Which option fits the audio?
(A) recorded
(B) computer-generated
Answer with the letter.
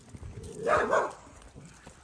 B